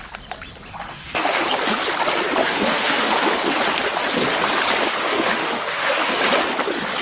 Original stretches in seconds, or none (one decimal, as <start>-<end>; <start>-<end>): 0.0-0.9; 1.4-2.4; 3.1-5.0; 6.2-7.0